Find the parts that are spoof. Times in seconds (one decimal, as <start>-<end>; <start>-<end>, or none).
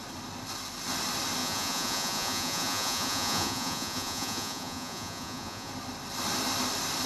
1.4-5.7